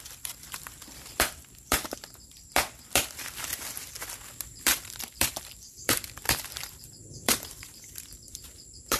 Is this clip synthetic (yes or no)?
yes